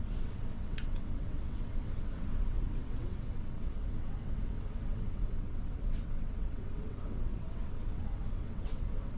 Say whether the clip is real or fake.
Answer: fake